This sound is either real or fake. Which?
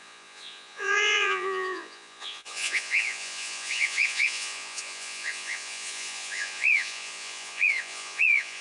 fake